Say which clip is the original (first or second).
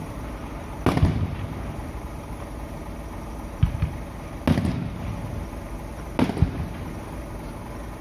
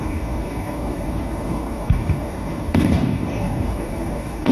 first